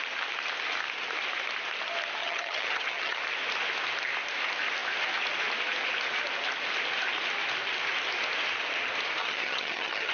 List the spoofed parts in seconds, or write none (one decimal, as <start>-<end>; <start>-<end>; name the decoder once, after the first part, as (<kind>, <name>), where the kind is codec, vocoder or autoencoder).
2.2-3.2 (vocoder, HiFi-GAN); 9.2-10.1